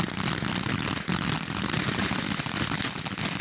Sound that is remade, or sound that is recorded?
recorded